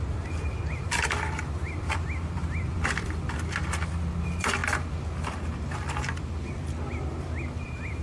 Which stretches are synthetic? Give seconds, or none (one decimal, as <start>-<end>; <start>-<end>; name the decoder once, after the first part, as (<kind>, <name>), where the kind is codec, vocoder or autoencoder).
0.0-4.6 (vocoder, BigVGAN v2); 5.2-8.0

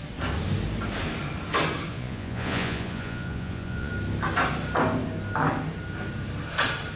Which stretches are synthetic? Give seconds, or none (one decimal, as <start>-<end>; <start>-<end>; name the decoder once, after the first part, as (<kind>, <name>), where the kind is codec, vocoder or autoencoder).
1.9-3.9 (vocoder, Vocos)